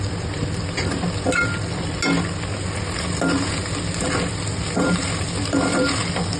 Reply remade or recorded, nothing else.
recorded